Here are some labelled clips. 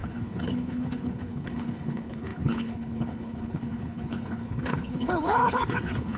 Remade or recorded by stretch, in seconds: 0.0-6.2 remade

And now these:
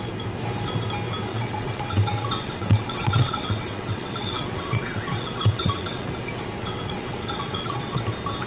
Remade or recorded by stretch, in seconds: 0.0-1.3 recorded; 1.3-6.1 remade; 6.1-6.6 recorded; 6.6-8.0 remade; 8.0-8.5 recorded

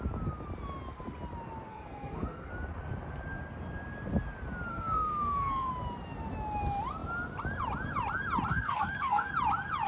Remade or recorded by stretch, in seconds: 0.0-1.7 recorded; 1.7-2.5 remade; 2.5-4.7 recorded; 4.7-5.7 remade; 5.7-8.5 recorded; 8.5-9.3 remade; 9.3-9.9 recorded

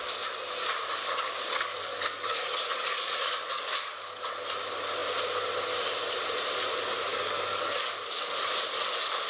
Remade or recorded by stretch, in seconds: 0.0-1.0 recorded; 1.0-4.2 remade; 4.2-7.1 recorded; 7.1-8.3 remade; 8.3-9.3 recorded

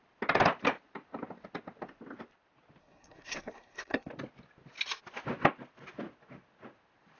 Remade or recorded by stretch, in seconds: 0.0-2.8 recorded; 2.8-4.1 remade; 4.1-7.2 recorded

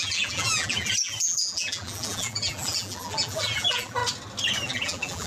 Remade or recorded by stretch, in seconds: 0.0-4.0 remade; 4.0-4.6 recorded; 4.6-5.3 remade

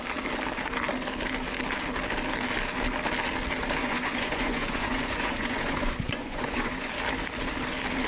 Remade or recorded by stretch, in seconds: 0.0-3.8 recorded; 3.8-6.9 remade; 6.9-8.1 recorded